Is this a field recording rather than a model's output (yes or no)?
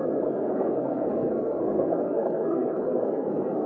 no